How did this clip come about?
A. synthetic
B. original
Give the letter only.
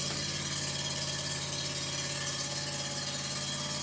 B